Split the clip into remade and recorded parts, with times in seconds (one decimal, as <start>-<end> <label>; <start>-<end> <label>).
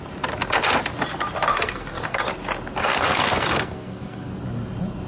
0.0-1.5 recorded; 1.5-2.2 remade; 2.2-2.8 recorded; 2.8-4.4 remade; 4.4-5.1 recorded